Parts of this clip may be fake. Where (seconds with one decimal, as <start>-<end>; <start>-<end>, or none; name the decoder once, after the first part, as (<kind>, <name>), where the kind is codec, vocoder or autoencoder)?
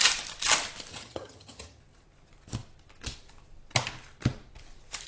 0.9-1.8 (vocoder, HiFi-GAN)